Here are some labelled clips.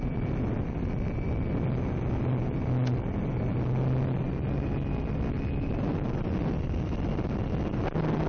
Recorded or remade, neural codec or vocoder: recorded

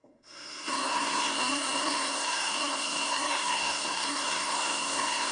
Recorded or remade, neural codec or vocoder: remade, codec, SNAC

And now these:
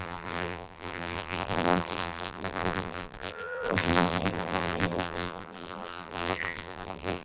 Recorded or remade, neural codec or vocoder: remade, vocoder, BigVGAN v2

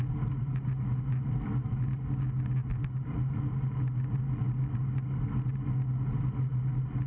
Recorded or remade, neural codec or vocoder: recorded